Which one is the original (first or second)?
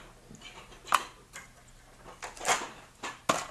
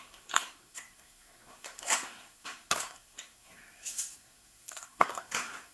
first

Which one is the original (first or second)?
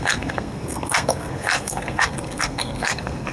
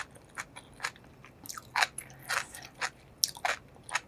second